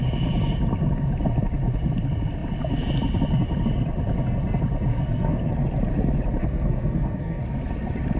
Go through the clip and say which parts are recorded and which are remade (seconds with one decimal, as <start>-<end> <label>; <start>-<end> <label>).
0.0-4.9 recorded; 4.9-5.5 remade; 5.5-6.4 recorded; 6.4-7.4 remade; 7.4-8.2 recorded